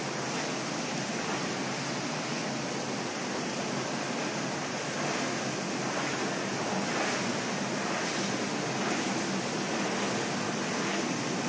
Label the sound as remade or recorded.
recorded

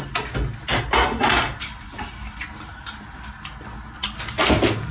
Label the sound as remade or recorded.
recorded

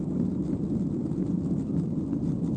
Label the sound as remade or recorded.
remade